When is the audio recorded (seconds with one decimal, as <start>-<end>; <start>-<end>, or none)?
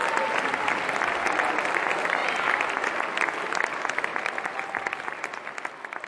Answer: 0.0-4.1; 5.2-6.1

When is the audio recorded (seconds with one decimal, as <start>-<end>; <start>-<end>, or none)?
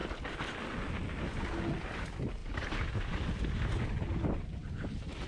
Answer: 0.0-5.3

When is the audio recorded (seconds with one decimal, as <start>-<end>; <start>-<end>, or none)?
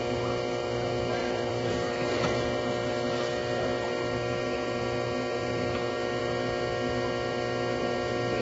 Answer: 0.0-1.2; 1.7-8.4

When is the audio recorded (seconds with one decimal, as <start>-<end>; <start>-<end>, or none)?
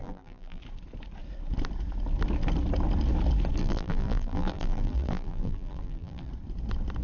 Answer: 0.6-3.6; 6.3-7.0